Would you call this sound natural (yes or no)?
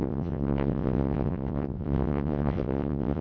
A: no